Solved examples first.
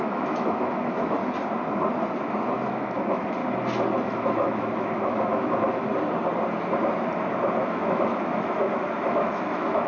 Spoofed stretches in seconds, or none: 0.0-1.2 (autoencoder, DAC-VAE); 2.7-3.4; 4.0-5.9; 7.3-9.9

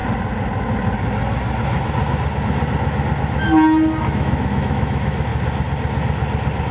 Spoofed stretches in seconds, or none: 4.0-5.3 (autoencoder, DAC-VAE)

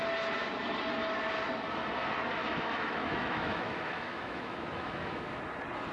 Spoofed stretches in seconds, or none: 2.4-5.4 (autoencoder, DAC-VAE)

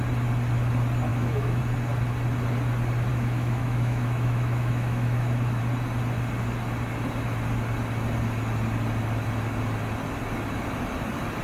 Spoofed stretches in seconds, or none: 1.1-1.6 (autoencoder, DAC-VAE); 3.1-5.6

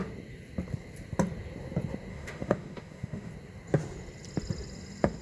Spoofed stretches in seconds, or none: 2.1-3.3 (autoencoder, DAC-VAE)

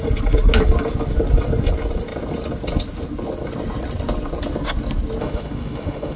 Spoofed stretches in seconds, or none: 5.2-6.2 (autoencoder, DAC-VAE)

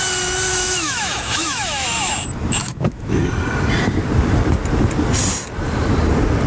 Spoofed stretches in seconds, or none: 0.5-2.1 (autoencoder, DAC-VAE); 2.6-3.2

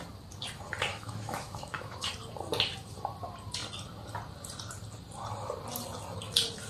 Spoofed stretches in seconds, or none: 0.9-2.1 (autoencoder, DAC-VAE)